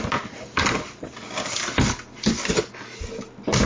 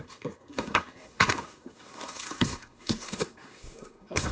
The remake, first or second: second